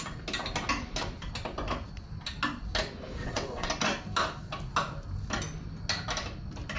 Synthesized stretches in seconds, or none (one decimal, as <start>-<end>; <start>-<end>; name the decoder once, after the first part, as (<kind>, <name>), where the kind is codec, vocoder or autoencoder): 3.2-3.7 (vocoder, WaveNeXt)